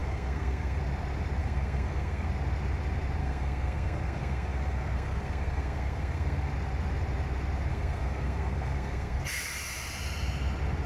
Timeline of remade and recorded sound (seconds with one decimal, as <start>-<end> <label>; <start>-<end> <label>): 0.0-0.8 remade; 0.8-1.4 recorded; 1.4-2.3 remade; 2.3-3.2 recorded; 3.2-6.5 remade; 6.5-7.7 recorded; 7.7-9.2 remade; 9.2-10.9 recorded